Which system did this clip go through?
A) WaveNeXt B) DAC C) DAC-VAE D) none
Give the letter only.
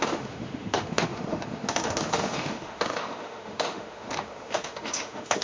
C